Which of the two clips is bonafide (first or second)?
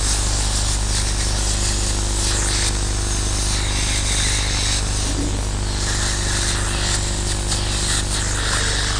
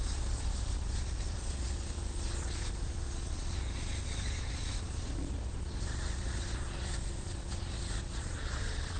first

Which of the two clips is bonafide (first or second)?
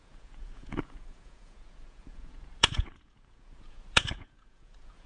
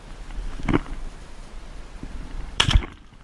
second